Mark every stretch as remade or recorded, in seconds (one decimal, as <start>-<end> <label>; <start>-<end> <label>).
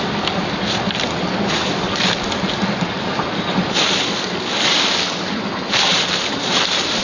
0.0-5.9 recorded; 5.9-7.0 remade